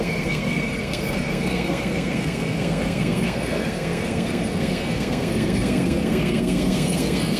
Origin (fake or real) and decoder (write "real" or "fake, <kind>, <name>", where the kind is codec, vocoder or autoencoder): fake, codec, SNAC